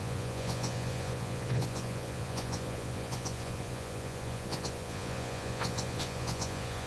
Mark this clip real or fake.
fake